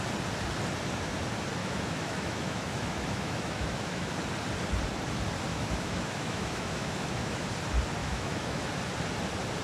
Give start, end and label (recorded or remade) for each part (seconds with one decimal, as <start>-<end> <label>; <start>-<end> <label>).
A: 0.0-1.6 recorded; 1.6-4.1 remade; 4.1-5.5 recorded; 5.5-7.5 remade; 7.5-8.0 recorded; 8.0-8.7 remade; 8.7-9.6 recorded